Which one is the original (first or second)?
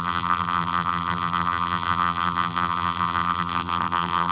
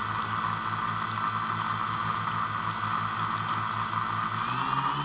second